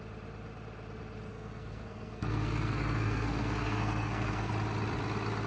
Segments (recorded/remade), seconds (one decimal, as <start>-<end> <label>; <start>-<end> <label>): 0.0-1.3 recorded; 1.3-4.5 remade; 4.5-5.5 recorded